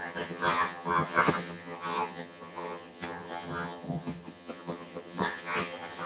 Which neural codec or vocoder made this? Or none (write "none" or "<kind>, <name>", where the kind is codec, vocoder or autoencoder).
vocoder, HiFi-GAN